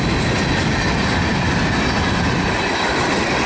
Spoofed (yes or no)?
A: no